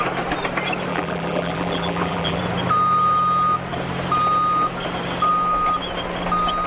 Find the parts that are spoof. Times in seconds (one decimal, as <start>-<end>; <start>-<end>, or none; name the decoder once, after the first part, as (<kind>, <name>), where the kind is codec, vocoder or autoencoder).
0.9-2.4 (vocoder, BigVGAN v2)